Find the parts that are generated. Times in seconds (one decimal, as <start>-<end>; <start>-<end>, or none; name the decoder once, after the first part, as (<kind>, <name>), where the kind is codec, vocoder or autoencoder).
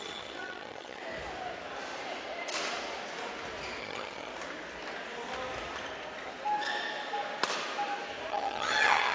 0.0-1.0 (vocoder, HiFi-GAN); 3.8-4.3; 8.3-9.1